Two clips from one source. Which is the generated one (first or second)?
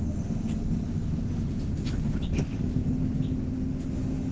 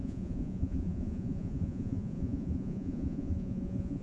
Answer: second